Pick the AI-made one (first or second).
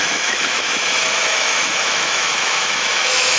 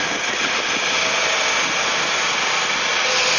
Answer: first